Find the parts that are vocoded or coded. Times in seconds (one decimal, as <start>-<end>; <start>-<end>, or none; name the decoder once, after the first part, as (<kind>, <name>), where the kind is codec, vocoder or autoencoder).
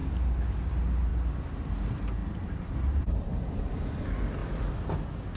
0.0-0.7 (vocoder, BigVGAN v2); 2.2-3.7; 4.4-4.9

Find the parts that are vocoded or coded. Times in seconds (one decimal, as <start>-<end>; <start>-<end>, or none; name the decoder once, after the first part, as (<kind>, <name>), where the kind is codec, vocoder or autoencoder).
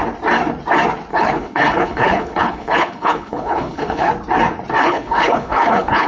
1.1-4.1 (codec, HILCodec); 4.8-6.1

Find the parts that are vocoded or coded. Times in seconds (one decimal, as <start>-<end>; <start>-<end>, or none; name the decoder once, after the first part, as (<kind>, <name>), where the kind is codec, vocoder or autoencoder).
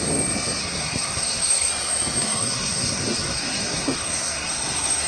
0.6-1.7 (codec, SNAC); 2.2-5.1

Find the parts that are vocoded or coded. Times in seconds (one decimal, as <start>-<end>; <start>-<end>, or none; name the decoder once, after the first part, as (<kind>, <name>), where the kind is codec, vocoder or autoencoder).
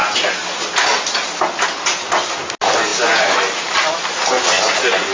none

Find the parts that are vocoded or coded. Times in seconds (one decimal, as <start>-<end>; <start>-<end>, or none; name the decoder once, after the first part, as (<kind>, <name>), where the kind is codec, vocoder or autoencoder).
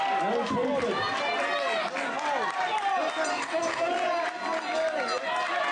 3.3-3.9 (codec, DAC)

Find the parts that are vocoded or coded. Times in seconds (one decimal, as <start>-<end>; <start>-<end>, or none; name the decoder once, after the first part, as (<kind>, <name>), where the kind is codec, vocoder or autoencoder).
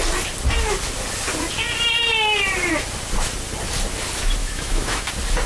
4.4-5.1 (autoencoder, DAC-VAE)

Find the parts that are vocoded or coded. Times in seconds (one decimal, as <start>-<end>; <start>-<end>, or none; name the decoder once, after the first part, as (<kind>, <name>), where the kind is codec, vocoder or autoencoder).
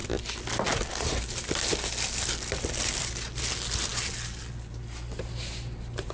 none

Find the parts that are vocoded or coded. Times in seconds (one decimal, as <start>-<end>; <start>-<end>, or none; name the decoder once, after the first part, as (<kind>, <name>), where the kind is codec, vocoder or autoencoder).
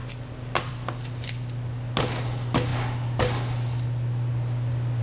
none